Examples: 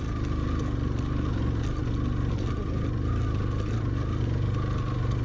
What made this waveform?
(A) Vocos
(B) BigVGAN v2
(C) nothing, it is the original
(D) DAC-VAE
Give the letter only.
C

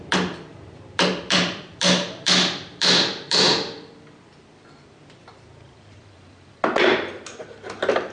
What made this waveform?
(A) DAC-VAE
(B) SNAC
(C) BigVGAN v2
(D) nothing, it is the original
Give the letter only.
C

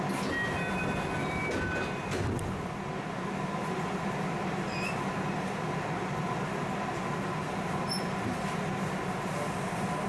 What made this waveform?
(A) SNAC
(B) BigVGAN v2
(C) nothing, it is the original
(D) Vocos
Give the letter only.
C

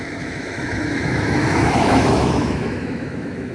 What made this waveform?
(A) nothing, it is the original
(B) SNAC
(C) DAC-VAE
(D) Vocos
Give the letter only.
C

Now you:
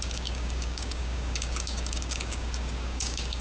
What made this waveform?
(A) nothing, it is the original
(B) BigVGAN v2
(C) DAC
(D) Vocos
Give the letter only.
C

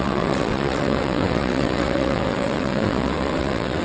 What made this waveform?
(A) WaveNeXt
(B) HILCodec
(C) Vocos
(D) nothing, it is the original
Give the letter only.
A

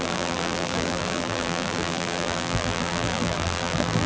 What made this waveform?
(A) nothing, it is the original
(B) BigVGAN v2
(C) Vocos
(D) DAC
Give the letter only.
B